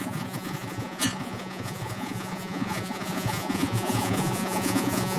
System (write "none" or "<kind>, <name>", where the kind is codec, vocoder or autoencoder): vocoder, Vocos